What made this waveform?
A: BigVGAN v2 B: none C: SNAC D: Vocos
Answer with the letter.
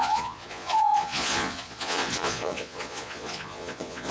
D